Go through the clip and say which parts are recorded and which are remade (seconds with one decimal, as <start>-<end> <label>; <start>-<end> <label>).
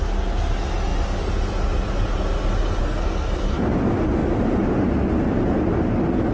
0.0-2.8 recorded; 2.8-3.6 remade; 3.6-6.3 recorded